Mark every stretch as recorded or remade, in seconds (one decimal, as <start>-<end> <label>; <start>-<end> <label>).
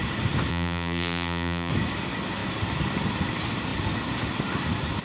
0.0-0.5 recorded; 0.5-1.7 remade; 1.7-5.0 recorded